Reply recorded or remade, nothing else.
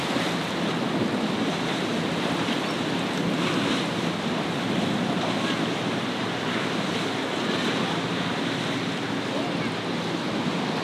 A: recorded